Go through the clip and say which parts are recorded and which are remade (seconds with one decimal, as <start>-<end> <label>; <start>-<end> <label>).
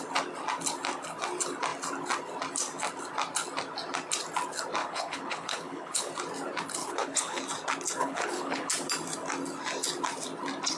0.0-4.8 recorded; 4.8-6.1 remade; 6.1-6.8 recorded; 6.8-7.4 remade; 7.4-8.0 recorded; 8.0-8.7 remade; 8.7-10.8 recorded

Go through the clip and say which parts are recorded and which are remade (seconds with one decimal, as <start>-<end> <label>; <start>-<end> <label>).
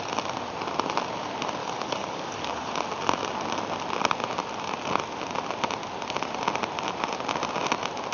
0.0-1.6 recorded; 1.6-2.7 remade; 2.7-8.1 recorded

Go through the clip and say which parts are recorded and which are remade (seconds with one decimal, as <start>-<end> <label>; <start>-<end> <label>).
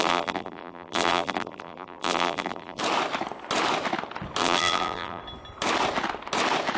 0.0-2.8 remade; 2.8-4.4 recorded; 4.4-5.2 remade; 5.2-6.8 recorded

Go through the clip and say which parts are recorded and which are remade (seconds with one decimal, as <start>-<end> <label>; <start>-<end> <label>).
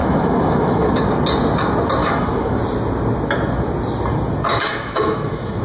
0.0-0.9 remade; 0.9-2.0 recorded; 2.0-2.6 remade; 2.6-4.5 recorded; 4.5-5.6 remade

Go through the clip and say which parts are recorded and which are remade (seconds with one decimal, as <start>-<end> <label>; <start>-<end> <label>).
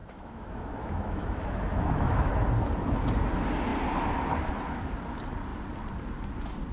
0.0-2.3 remade; 2.3-6.7 recorded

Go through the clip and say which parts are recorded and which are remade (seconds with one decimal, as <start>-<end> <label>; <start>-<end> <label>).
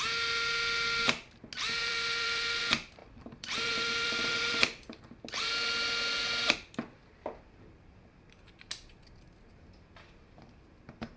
0.0-1.8 recorded; 1.8-2.6 remade; 2.6-3.0 recorded; 3.0-5.0 remade; 5.0-11.2 recorded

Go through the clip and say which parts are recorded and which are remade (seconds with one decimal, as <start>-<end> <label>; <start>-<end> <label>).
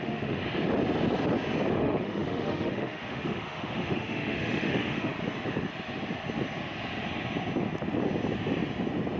0.0-0.4 remade; 0.4-1.7 recorded; 1.7-5.1 remade; 5.1-9.2 recorded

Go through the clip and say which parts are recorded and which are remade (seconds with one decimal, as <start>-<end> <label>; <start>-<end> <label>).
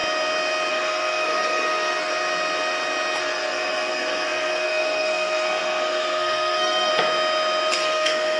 0.0-0.7 recorded; 0.7-2.1 remade; 2.1-3.2 recorded; 3.2-6.9 remade; 6.9-7.7 recorded; 7.7-8.4 remade